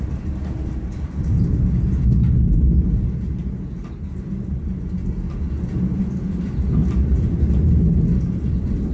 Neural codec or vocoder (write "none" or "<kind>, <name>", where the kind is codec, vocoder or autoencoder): none